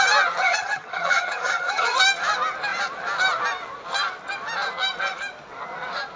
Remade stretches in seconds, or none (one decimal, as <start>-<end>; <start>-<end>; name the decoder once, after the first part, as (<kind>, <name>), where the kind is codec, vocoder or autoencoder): 0.4-2.0 (vocoder, HiFi-GAN)